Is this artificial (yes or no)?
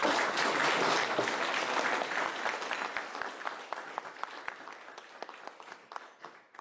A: no